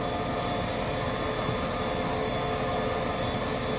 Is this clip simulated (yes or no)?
no